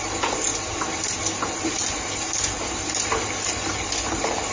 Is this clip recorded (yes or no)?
yes